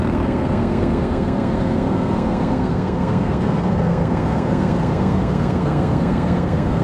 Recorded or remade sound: remade